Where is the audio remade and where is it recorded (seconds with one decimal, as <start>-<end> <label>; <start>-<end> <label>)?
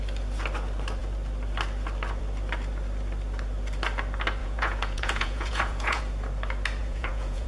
0.0-4.4 recorded; 4.4-6.0 remade; 6.0-6.8 recorded; 6.8-7.5 remade